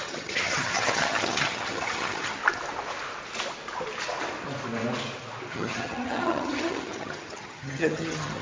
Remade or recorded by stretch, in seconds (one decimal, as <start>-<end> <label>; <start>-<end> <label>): 0.0-2.4 remade; 2.4-5.5 recorded; 5.5-8.4 remade